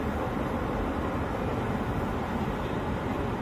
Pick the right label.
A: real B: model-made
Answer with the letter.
A